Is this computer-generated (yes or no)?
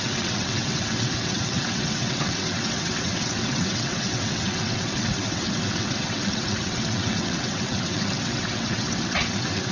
yes